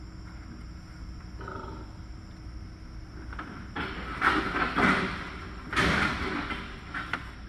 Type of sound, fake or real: real